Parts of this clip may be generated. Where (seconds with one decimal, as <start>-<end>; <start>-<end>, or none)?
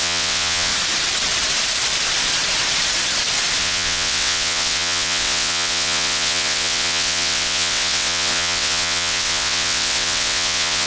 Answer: 0.0-0.7; 3.6-10.9